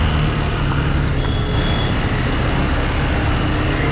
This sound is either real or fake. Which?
real